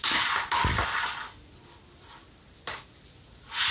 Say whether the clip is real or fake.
real